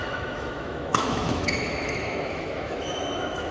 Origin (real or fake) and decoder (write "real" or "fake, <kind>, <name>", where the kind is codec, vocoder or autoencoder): fake, autoencoder, DAC-VAE